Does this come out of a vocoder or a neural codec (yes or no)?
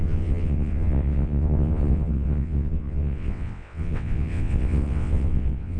yes